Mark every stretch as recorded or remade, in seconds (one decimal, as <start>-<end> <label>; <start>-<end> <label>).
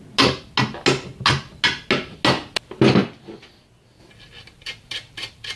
0.0-5.6 recorded